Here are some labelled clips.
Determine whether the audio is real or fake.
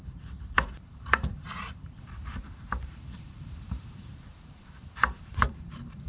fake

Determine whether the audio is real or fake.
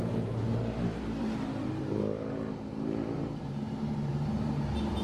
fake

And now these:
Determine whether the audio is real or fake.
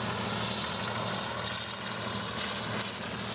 real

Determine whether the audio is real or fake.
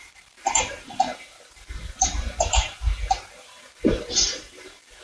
fake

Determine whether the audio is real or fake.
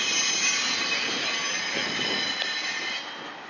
real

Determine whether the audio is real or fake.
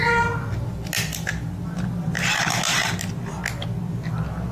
real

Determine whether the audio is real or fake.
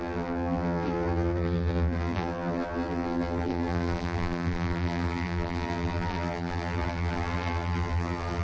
fake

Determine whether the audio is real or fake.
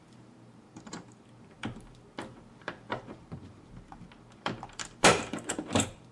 fake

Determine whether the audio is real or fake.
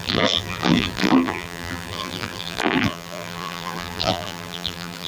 fake